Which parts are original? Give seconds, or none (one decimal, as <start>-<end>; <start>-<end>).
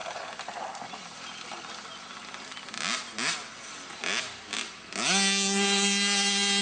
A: 0.0-6.6